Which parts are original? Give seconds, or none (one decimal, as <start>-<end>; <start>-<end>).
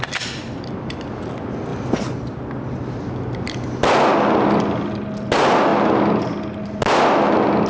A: 0.0-7.7